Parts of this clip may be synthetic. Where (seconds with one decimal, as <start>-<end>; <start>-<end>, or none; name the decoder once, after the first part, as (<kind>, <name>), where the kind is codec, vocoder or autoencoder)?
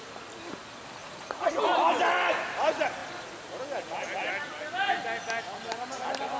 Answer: 1.0-1.5 (vocoder, Vocos)